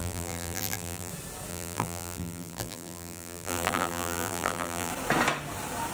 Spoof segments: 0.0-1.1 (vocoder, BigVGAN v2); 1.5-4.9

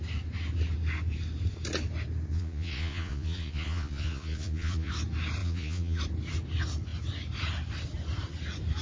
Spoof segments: 2.3-4.9 (vocoder, Vocos); 5.4-6.0

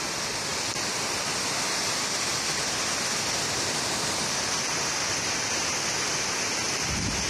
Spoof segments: none